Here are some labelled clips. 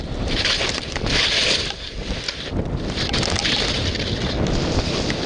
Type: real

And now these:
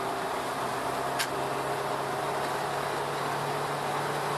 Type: real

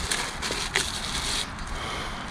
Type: real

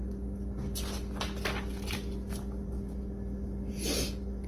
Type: real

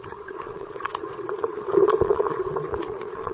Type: fake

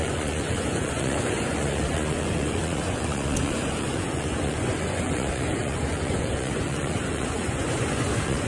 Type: fake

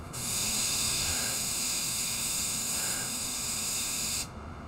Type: fake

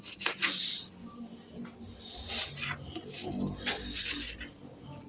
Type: real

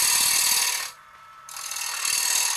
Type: real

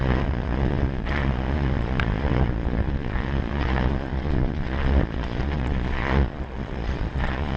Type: fake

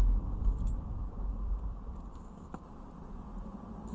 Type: fake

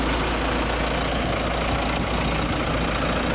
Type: real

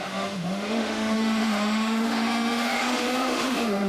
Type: fake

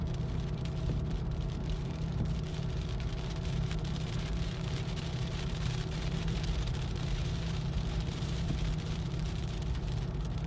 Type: fake